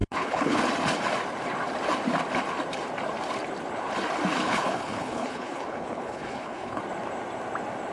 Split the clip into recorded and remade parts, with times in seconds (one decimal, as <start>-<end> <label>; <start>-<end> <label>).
0.0-0.6 remade; 0.6-4.4 recorded; 4.4-6.8 remade; 6.8-7.9 recorded

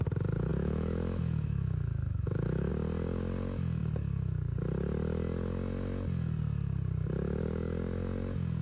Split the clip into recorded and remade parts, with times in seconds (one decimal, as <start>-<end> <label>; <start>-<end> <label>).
0.0-0.5 recorded; 0.5-2.7 remade; 2.7-8.6 recorded